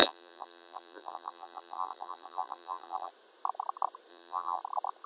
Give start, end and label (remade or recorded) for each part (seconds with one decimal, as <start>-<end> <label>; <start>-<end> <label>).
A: 0.0-3.1 remade; 3.1-4.1 recorded; 4.1-4.6 remade; 4.6-5.1 recorded